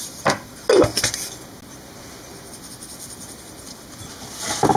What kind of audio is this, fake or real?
real